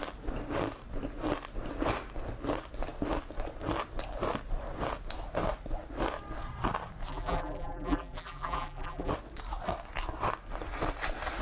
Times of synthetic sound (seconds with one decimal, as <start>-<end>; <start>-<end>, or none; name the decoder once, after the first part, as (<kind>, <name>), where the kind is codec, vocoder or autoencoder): 7.1-9.1 (vocoder, BigVGAN v2)